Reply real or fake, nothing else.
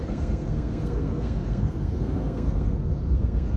fake